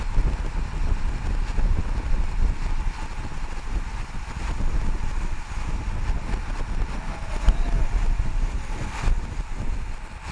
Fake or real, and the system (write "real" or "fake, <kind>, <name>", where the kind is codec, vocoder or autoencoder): real